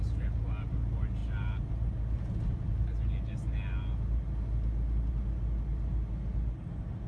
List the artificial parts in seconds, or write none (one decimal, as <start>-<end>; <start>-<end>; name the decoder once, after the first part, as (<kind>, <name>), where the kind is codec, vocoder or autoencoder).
none